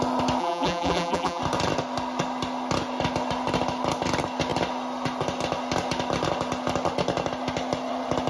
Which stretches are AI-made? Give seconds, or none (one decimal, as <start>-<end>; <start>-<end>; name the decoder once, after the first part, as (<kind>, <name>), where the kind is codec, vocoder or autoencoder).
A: 0.4-1.4 (vocoder, BigVGAN v2)